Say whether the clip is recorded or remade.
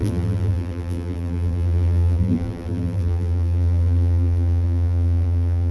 remade